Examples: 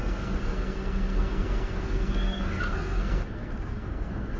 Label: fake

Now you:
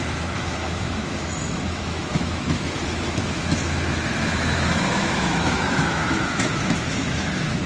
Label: fake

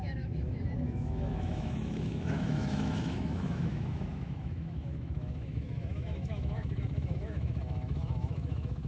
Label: fake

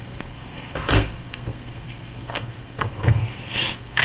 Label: fake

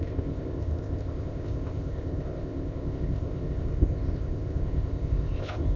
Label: fake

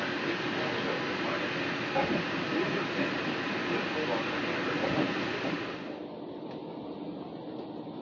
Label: real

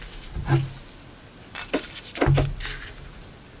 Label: real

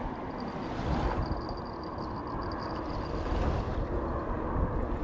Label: real